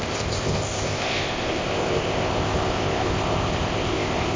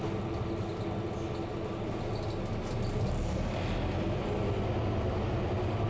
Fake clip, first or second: first